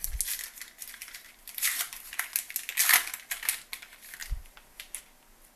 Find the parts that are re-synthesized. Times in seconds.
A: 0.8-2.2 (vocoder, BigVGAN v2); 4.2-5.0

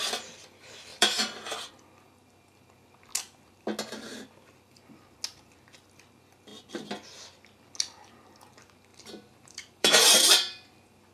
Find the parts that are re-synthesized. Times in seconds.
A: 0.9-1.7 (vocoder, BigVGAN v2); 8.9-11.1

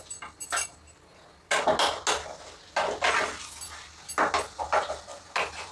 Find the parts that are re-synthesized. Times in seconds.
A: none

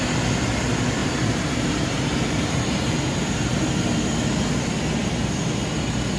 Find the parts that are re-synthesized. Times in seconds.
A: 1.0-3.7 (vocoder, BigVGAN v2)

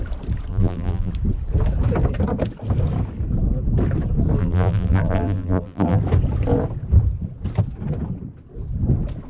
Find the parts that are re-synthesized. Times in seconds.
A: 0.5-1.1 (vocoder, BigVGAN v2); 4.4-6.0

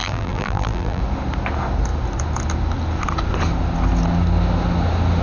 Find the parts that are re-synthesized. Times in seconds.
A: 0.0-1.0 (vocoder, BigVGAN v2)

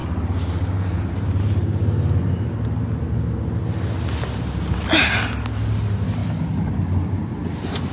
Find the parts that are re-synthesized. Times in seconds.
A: none